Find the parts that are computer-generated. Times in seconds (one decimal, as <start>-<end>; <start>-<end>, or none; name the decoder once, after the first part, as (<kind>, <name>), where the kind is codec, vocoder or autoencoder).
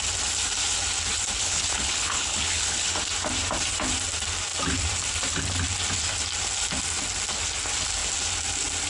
1.4-2.9 (codec, HILCodec)